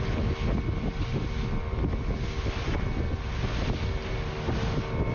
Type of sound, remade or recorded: recorded